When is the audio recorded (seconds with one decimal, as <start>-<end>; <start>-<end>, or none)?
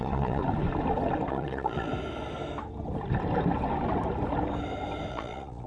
0.4-1.3; 1.9-5.1